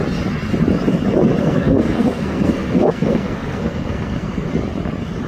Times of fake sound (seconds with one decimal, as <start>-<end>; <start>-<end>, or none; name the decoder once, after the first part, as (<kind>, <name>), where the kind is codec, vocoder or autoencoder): 1.4-4.5 (codec, SNAC)